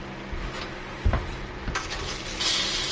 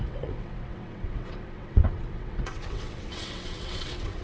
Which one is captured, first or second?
first